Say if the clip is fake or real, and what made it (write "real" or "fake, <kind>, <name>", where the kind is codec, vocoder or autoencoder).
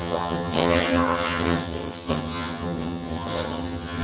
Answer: fake, vocoder, HiFi-GAN